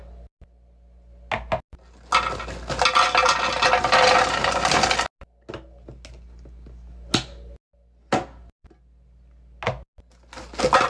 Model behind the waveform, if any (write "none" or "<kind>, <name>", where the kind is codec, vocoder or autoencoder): none